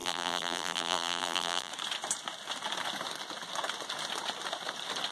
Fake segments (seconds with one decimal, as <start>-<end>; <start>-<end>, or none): 0.0-1.7